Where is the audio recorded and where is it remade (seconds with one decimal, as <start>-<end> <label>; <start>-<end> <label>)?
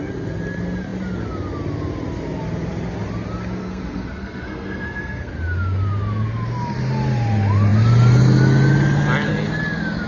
0.0-3.6 recorded; 3.6-5.3 remade; 5.3-10.1 recorded